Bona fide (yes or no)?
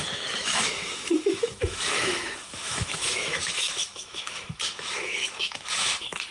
no